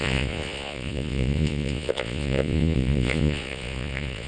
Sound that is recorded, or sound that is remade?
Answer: remade